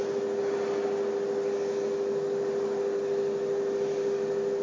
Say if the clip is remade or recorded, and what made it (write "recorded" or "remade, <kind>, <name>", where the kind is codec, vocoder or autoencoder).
recorded